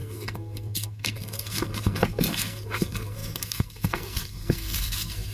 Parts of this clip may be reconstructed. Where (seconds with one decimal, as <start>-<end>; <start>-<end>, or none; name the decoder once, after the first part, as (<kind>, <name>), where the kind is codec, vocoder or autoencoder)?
0.0-5.3 (codec, SNAC)